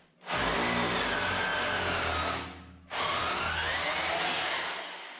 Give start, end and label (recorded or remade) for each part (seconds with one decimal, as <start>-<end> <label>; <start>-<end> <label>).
0.0-5.2 recorded